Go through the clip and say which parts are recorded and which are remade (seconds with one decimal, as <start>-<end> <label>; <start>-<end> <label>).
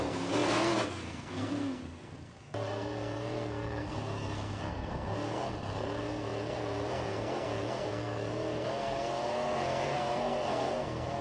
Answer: 0.0-11.2 remade